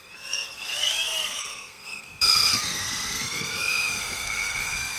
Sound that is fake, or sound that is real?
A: fake